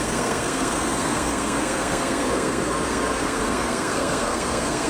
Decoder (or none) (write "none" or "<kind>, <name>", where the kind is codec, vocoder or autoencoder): codec, SNAC